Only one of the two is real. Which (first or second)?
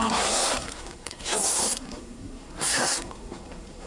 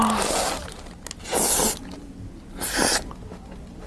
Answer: second